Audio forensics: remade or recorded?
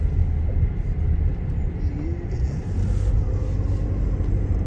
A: recorded